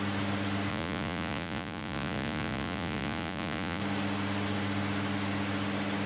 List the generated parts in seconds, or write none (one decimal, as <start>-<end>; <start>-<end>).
0.7-3.8